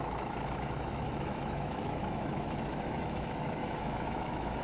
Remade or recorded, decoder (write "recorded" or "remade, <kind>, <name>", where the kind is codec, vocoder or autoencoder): remade, autoencoder, DAC-VAE